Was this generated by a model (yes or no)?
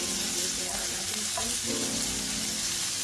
no